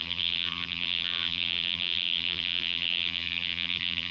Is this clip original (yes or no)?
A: no